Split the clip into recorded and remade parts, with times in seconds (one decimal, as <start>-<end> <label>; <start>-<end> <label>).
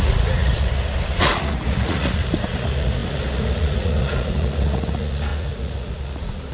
0.0-6.5 remade